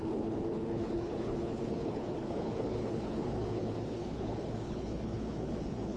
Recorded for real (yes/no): no